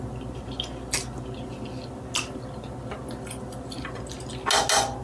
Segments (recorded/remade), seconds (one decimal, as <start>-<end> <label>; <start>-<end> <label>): 0.0-5.0 recorded